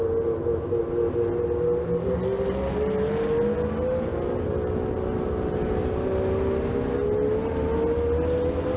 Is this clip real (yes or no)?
yes